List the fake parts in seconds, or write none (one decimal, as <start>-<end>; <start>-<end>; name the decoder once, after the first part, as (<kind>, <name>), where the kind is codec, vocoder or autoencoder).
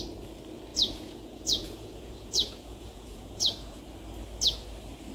0.7-3.8 (vocoder, Vocos)